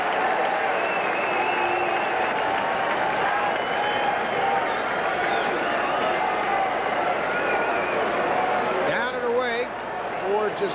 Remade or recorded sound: recorded